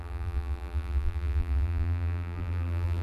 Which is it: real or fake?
fake